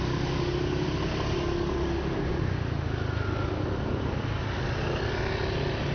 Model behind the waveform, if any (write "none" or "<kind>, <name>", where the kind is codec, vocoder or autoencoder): none